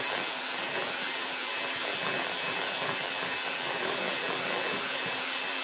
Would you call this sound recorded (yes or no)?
no